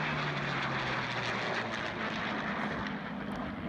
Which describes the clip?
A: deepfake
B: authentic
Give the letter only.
B